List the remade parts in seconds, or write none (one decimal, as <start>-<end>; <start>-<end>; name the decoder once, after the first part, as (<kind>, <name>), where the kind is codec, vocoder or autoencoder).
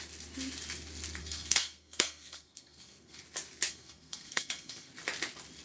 1.2-3.2 (codec, SNAC); 3.7-4.9